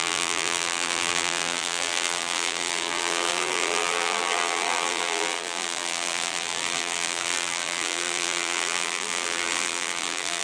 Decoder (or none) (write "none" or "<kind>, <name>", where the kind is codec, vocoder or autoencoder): vocoder, BigVGAN v2